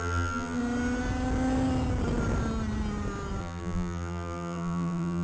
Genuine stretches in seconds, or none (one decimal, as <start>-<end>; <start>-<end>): 0.6-3.4